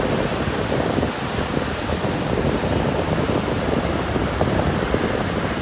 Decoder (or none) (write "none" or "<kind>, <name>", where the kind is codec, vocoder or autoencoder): none